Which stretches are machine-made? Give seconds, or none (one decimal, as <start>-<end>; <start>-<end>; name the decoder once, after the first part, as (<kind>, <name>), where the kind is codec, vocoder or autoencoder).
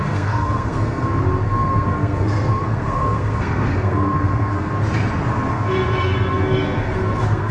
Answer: 0.0-4.7 (codec, SNAC); 5.5-7.5